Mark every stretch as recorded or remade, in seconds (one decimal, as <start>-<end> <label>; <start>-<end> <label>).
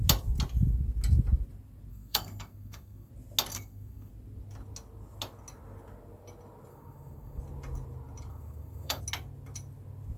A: 0.0-1.9 recorded; 1.9-3.1 remade; 3.1-3.5 recorded; 3.5-4.1 remade; 4.1-6.7 recorded; 6.7-7.4 remade; 7.4-8.3 recorded; 8.3-9.0 remade; 9.0-10.2 recorded